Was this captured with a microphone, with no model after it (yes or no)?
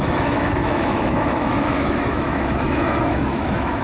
no